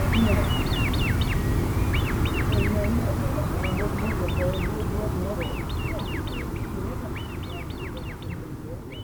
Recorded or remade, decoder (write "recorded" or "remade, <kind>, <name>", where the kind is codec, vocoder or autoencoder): recorded